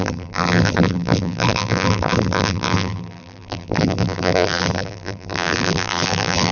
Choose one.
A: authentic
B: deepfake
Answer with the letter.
B